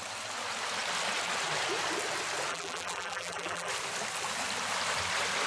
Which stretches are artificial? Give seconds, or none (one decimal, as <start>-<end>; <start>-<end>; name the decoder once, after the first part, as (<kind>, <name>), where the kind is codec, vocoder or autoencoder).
2.5-3.7 (vocoder, BigVGAN v2)